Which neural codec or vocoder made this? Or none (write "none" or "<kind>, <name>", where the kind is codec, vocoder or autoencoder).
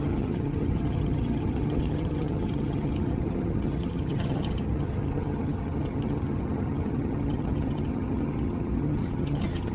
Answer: vocoder, HiFi-GAN